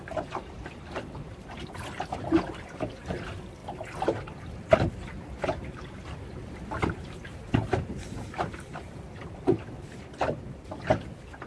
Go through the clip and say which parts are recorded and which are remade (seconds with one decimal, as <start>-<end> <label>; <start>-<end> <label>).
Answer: 0.0-11.5 remade